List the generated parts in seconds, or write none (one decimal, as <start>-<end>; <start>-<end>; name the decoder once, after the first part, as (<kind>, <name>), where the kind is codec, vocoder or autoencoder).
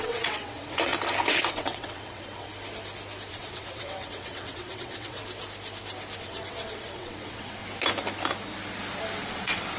0.0-0.9 (vocoder, WaveNeXt); 1.5-2.5; 3.3-5.2; 6.2-7.6; 9.3-9.8